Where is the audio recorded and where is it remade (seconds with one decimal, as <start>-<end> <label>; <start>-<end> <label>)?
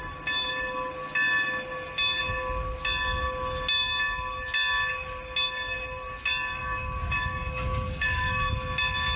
0.0-6.6 recorded; 6.6-8.5 remade; 8.5-9.2 recorded